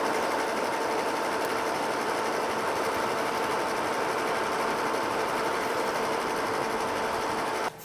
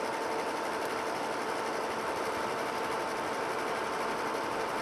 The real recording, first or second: second